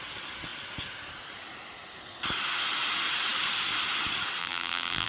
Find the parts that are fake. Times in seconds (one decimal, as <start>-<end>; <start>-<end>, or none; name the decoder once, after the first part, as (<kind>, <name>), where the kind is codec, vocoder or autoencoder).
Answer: 4.4-5.1 (vocoder, BigVGAN v2)